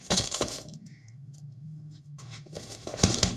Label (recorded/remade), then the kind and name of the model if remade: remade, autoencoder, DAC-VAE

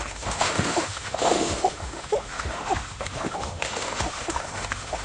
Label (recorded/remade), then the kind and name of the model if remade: remade, autoencoder, DAC-VAE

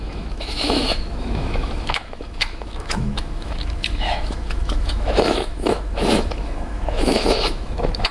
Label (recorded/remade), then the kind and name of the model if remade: remade, autoencoder, DAC-VAE